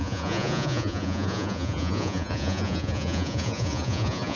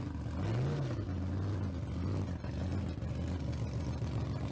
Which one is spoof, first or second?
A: first